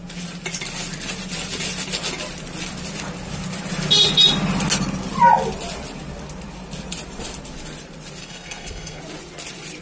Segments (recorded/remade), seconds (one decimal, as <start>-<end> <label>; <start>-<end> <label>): 0.0-8.2 recorded; 8.2-9.0 remade; 9.0-9.8 recorded